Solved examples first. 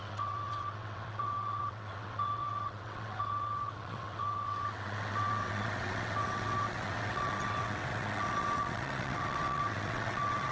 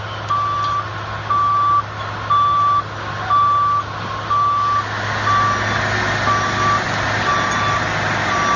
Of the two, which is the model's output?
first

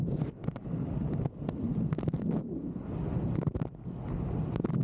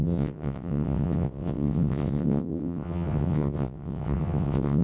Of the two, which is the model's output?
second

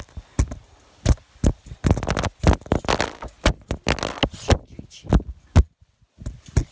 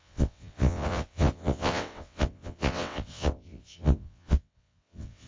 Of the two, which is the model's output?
second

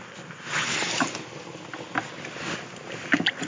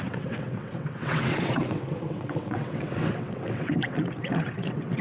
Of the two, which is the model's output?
second